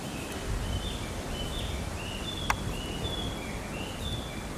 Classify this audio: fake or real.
real